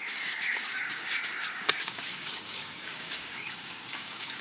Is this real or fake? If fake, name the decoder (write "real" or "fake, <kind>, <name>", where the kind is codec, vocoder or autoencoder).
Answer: fake, codec, DAC